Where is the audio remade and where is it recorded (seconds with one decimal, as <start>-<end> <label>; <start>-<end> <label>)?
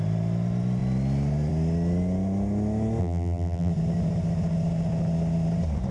0.0-3.0 recorded; 3.0-3.7 remade; 3.7-5.9 recorded